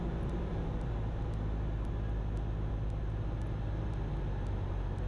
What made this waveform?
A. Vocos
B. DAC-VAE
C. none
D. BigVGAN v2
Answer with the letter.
C